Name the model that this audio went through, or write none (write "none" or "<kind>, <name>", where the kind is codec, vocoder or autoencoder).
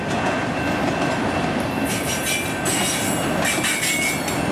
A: none